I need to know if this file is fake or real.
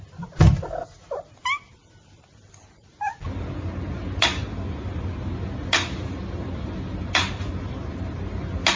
real